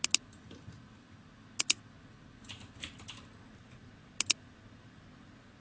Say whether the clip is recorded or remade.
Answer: recorded